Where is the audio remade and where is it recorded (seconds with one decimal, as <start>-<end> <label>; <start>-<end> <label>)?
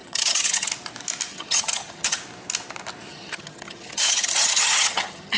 0.0-0.7 remade; 0.7-1.3 recorded; 1.3-2.2 remade; 2.2-3.1 recorded; 3.1-5.4 remade